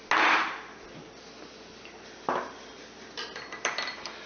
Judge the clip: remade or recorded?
recorded